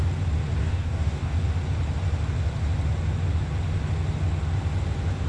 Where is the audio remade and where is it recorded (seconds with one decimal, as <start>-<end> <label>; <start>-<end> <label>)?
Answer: 0.0-0.6 recorded; 0.6-1.3 remade; 1.3-5.3 recorded